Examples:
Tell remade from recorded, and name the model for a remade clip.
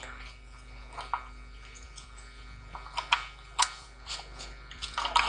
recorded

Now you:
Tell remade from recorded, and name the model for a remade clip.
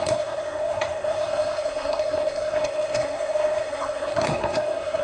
remade, codec, SNAC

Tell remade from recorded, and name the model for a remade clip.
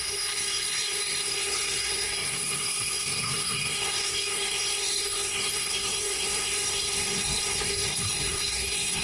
remade, codec, SNAC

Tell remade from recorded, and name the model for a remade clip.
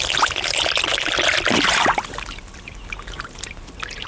recorded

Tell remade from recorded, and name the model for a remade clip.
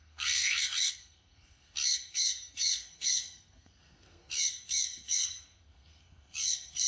remade, codec, SNAC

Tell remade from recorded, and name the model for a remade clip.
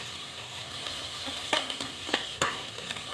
remade, codec, SNAC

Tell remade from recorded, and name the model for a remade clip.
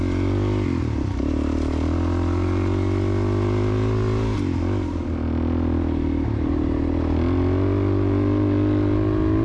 recorded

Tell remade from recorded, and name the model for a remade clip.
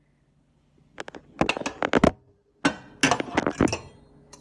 recorded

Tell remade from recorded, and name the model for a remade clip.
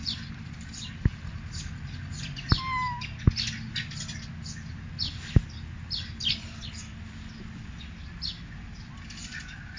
recorded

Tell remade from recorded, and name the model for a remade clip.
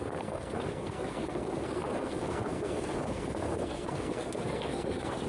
remade, codec, SNAC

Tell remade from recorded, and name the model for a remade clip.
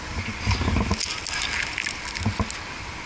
recorded